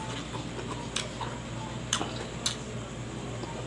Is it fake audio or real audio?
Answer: real